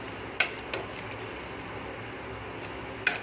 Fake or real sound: real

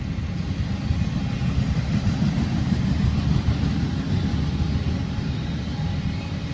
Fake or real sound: real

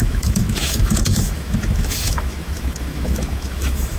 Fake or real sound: fake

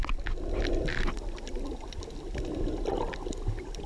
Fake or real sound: real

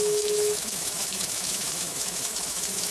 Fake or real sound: fake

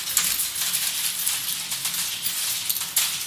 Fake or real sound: real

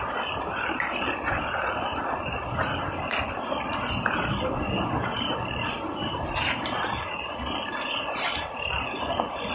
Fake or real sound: real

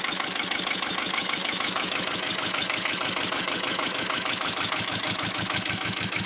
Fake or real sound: fake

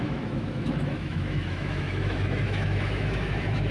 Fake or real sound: fake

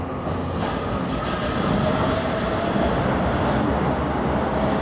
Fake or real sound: real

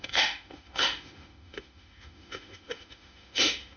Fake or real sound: fake